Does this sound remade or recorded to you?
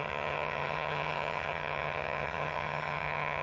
remade